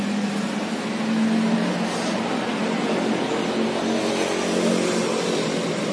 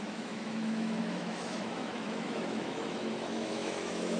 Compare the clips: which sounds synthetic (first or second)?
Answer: second